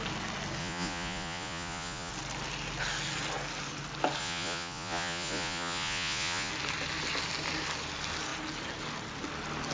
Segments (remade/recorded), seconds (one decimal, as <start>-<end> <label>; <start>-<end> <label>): 0.0-0.6 recorded; 0.6-2.1 remade; 2.1-4.2 recorded; 4.2-6.5 remade; 6.5-9.7 recorded